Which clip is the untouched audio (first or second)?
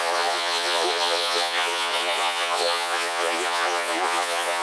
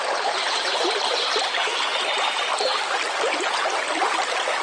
second